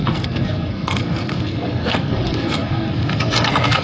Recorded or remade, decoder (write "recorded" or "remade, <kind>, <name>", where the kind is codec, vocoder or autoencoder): remade, codec, SNAC